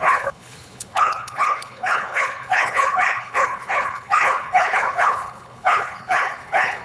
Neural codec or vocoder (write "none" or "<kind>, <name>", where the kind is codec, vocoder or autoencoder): codec, HILCodec